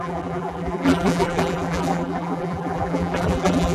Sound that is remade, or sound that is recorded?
remade